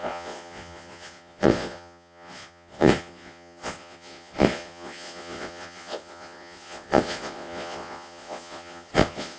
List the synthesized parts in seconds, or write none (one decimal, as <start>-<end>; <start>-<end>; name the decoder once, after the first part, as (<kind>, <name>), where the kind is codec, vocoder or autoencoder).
0.0-9.4 (vocoder, Vocos)